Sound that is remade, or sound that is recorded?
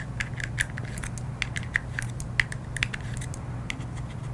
recorded